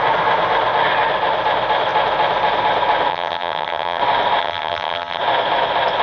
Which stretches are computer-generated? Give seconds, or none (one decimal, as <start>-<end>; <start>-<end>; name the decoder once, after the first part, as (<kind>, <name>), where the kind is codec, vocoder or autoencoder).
3.1-4.0 (vocoder, HiFi-GAN); 4.4-5.2

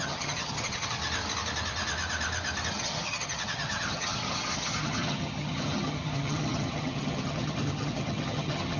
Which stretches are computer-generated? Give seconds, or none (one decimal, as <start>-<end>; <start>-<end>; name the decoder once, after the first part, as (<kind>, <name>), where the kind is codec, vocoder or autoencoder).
0.0-1.0 (vocoder, HiFi-GAN); 2.7-8.8

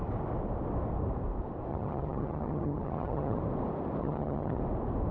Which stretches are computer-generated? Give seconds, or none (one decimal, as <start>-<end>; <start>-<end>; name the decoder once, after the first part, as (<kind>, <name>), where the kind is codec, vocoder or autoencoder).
1.7-3.4 (vocoder, HiFi-GAN); 4.0-4.6

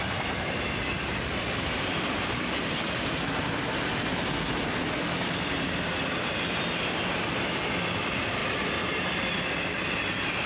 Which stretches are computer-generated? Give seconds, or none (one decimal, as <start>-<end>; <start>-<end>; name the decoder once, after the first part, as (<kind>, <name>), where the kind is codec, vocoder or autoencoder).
none

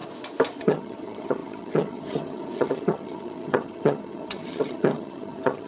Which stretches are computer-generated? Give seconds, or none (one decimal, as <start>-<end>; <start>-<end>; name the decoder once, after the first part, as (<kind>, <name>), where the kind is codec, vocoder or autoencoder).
0.6-5.7 (vocoder, HiFi-GAN)

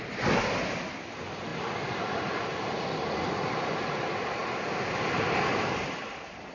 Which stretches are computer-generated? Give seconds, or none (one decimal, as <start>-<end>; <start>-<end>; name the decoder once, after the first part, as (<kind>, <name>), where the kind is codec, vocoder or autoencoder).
none

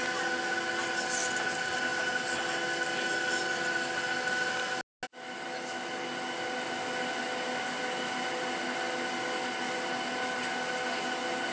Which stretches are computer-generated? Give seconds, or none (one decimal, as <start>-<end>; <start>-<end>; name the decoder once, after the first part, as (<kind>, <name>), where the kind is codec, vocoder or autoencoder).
none

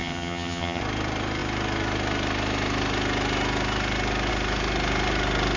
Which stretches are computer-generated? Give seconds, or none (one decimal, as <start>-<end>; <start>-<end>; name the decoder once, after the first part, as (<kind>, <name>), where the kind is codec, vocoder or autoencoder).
0.0-0.8 (vocoder, HiFi-GAN)